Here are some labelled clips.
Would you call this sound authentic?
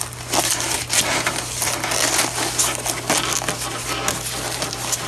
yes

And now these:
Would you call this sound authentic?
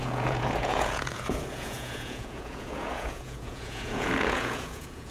no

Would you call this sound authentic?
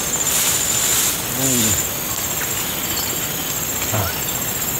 yes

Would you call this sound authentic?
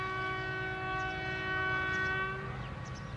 yes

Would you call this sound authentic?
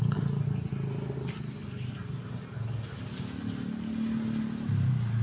yes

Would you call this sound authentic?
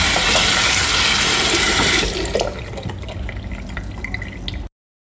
yes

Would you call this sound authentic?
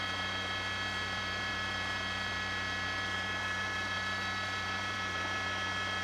yes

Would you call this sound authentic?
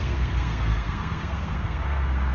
no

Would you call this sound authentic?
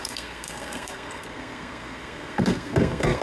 no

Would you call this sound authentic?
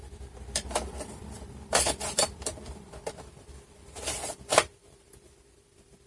no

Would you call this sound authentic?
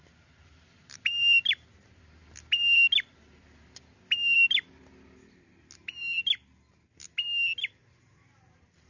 yes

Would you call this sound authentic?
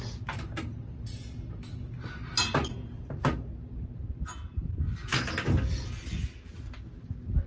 yes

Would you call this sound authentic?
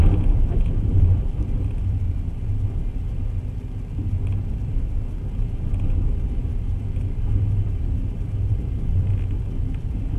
yes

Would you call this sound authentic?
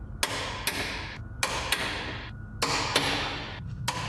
yes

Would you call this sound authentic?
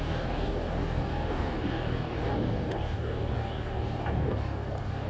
no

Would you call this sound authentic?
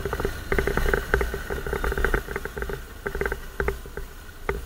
yes